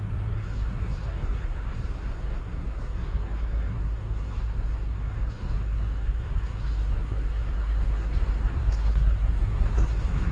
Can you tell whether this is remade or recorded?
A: remade